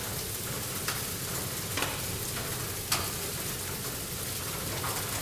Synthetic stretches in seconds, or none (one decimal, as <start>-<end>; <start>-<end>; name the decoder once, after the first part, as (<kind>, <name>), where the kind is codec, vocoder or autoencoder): none